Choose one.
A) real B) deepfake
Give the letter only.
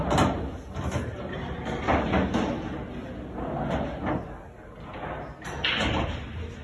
A